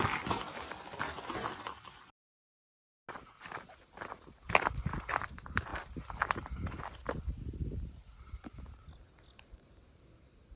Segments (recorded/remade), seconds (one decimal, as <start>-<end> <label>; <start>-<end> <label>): 0.0-10.6 recorded